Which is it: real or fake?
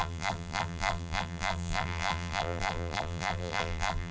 fake